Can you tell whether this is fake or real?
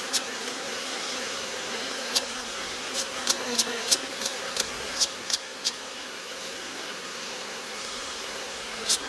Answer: fake